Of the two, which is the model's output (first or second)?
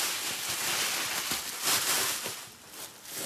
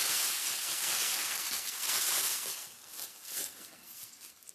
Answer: second